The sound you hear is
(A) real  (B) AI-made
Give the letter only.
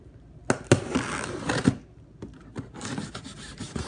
A